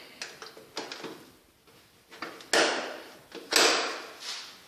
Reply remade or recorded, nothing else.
recorded